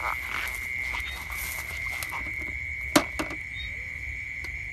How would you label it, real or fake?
real